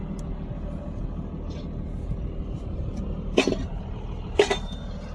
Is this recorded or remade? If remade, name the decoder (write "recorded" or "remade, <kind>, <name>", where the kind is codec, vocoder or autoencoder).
recorded